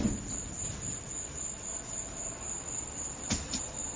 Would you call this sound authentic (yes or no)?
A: yes